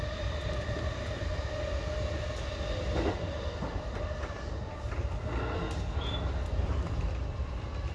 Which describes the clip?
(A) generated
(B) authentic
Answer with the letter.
B